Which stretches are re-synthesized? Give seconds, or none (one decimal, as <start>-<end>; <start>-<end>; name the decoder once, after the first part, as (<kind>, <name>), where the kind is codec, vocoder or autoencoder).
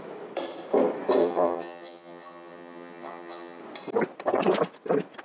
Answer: 1.2-3.6 (vocoder, HiFi-GAN)